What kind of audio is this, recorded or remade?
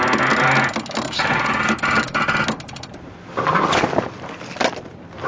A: recorded